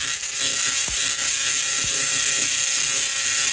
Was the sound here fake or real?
real